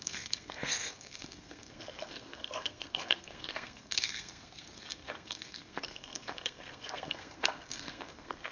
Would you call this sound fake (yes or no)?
yes